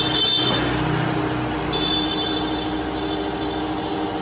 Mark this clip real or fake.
real